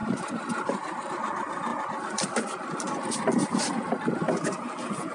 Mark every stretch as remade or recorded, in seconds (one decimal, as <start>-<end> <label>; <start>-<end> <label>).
0.0-1.2 remade; 1.2-5.1 recorded